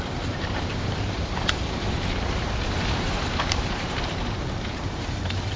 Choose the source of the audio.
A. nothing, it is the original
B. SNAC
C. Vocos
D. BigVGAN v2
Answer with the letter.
D